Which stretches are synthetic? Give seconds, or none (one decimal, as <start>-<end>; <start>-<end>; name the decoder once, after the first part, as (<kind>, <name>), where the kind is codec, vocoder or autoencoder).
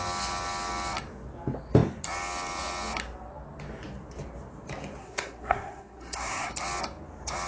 5.0-6.5 (codec, SNAC)